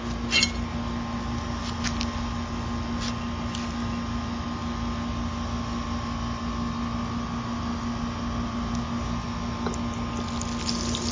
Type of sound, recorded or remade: recorded